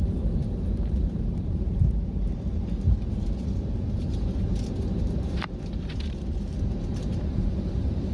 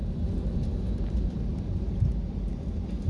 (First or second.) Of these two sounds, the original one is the second